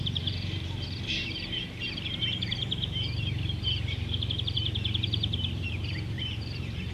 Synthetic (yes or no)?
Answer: yes